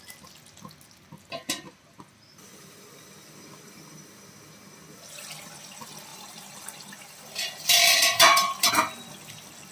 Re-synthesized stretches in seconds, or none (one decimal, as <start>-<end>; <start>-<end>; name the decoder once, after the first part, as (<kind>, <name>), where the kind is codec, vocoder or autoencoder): 6.1-8.7 (vocoder, BigVGAN v2)